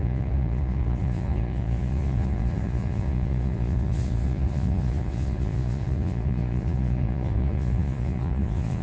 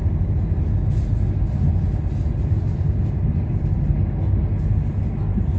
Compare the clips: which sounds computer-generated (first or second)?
first